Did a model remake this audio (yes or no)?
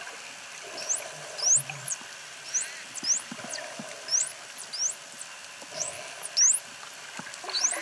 no